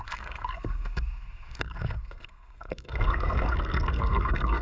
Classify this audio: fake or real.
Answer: fake